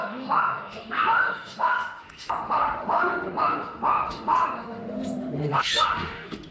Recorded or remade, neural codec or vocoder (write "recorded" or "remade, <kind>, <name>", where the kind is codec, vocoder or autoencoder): remade, autoencoder, DAC-VAE